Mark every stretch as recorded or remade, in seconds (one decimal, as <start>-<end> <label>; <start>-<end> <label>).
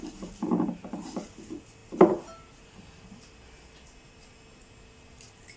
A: 0.0-5.6 recorded